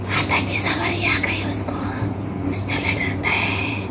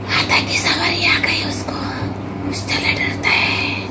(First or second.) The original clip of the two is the second